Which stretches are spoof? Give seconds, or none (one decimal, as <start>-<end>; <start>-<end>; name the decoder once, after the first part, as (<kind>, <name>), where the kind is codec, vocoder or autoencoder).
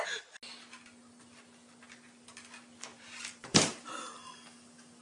2.9-3.9 (vocoder, BigVGAN v2)